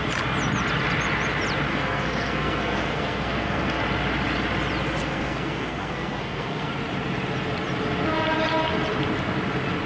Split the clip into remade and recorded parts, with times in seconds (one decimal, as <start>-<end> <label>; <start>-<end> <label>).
0.0-1.7 recorded; 1.7-3.8 remade; 3.8-5.0 recorded; 5.0-6.7 remade; 6.7-9.9 recorded